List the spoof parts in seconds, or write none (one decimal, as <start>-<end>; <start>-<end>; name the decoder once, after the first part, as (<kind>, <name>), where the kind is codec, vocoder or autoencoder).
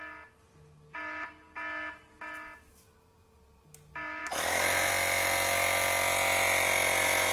none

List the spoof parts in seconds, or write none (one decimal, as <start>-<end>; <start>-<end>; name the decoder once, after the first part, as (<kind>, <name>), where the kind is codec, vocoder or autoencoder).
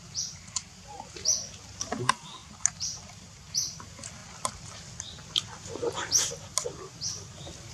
none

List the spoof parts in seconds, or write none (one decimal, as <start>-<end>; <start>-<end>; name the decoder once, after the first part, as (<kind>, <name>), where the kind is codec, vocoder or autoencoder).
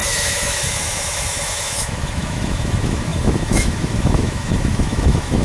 0.0-5.4 (autoencoder, DAC-VAE)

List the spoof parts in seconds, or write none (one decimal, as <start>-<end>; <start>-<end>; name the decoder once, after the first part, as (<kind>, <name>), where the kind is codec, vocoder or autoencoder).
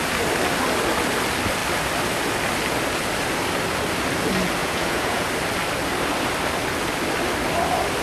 4.6-5.3 (vocoder, Vocos)